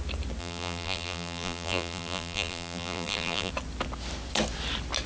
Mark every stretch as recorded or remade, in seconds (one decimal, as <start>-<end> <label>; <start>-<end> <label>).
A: 0.0-0.4 recorded; 0.4-3.5 remade; 3.5-5.1 recorded